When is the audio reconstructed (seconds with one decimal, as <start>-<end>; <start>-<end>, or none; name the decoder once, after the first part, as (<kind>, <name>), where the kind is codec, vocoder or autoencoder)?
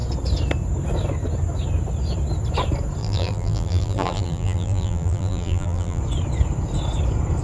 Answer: 3.0-6.0 (vocoder, BigVGAN v2)